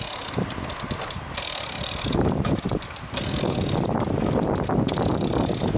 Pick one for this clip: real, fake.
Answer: real